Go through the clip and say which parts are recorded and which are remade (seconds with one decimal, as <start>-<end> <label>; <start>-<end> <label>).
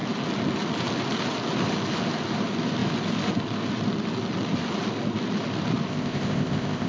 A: 0.0-5.9 recorded; 5.9-6.9 remade